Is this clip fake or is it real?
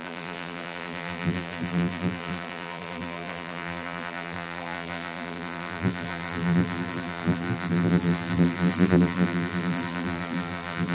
fake